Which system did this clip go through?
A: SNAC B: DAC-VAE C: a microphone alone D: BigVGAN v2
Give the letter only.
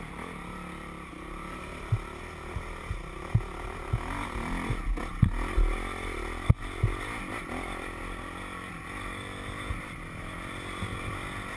C